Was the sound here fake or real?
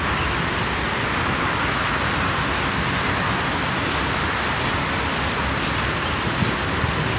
real